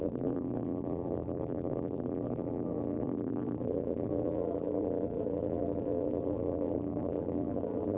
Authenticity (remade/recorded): remade